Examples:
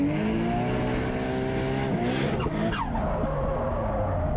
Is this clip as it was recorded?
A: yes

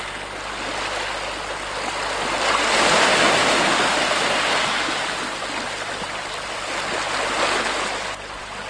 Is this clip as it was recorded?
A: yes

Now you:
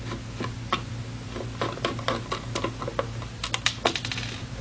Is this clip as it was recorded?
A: yes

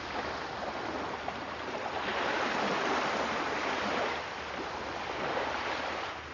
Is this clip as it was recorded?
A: yes